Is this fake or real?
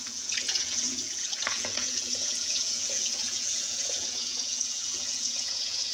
fake